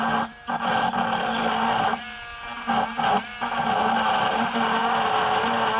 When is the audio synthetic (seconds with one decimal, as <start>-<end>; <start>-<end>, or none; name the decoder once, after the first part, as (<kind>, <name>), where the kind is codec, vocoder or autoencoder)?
none

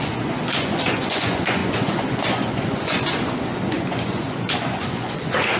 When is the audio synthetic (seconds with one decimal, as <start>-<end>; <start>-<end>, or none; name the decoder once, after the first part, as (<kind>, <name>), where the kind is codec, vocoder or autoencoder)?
0.0-5.6 (vocoder, Vocos)

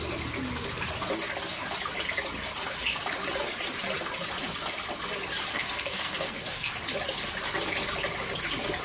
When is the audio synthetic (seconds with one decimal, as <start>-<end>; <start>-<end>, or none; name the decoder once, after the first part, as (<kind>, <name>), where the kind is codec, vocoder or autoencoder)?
5.5-6.7 (codec, SNAC)

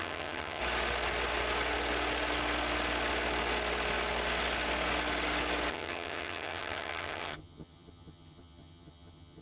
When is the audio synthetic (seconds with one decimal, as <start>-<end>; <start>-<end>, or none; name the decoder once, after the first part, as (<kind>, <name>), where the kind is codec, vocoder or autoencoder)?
0.0-0.6 (vocoder, HiFi-GAN); 5.7-9.4

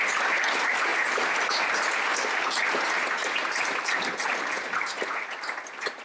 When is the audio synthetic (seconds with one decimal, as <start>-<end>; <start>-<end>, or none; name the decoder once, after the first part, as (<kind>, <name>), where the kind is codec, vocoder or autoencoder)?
none

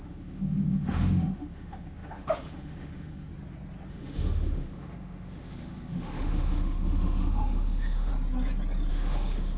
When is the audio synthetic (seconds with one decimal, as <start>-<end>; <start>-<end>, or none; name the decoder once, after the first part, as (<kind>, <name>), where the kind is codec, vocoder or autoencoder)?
0.0-3.3 (autoencoder, DAC-VAE); 3.9-8.1; 8.9-9.6

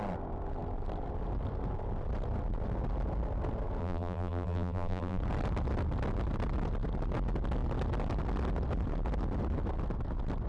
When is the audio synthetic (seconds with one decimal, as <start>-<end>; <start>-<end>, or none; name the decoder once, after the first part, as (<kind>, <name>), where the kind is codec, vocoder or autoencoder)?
3.8-5.2 (vocoder, BigVGAN v2)

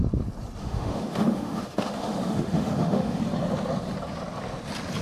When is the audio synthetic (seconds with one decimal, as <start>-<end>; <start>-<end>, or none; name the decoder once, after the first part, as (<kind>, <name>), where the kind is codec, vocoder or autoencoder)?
0.6-3.2 (autoencoder, DAC-VAE)